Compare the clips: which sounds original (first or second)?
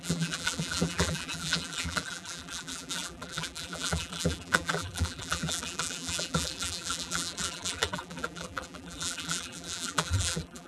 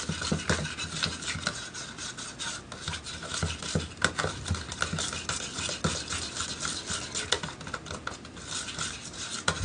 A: second